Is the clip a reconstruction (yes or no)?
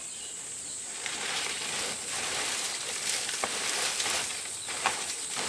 no